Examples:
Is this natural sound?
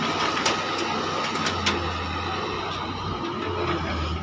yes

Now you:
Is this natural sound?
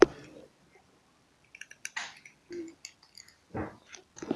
yes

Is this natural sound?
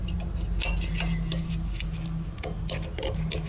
yes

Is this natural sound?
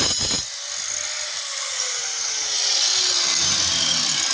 yes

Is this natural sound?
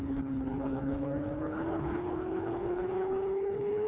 no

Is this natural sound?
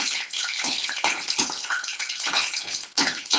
no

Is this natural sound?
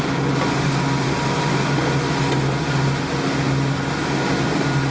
yes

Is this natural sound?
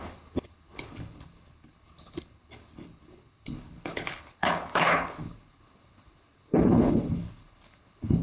no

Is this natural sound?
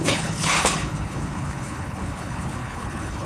no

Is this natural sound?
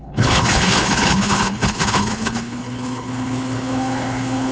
no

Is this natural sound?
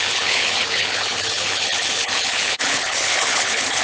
no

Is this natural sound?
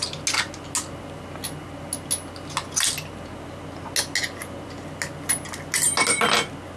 yes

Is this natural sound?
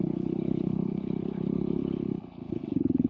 no